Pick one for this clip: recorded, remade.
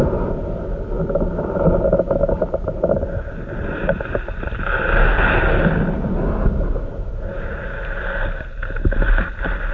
recorded